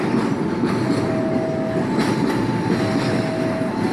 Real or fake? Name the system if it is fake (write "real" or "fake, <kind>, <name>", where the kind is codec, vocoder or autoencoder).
real